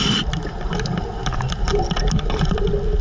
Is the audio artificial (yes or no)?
no